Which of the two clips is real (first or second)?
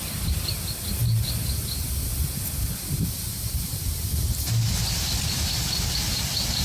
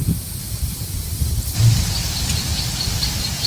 first